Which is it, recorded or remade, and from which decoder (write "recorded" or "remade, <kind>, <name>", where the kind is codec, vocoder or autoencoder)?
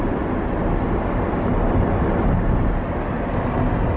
recorded